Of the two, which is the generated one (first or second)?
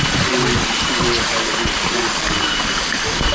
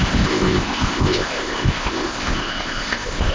second